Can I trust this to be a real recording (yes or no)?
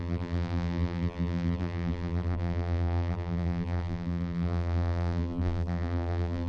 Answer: no